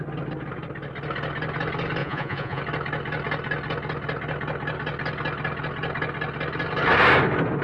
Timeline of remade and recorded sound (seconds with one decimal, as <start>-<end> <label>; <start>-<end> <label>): 0.0-2.0 recorded; 2.0-2.6 remade; 2.6-7.6 recorded